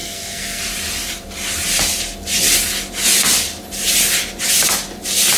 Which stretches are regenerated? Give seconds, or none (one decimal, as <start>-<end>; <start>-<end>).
0.0-0.6